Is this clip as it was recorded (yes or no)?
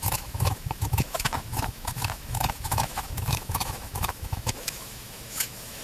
no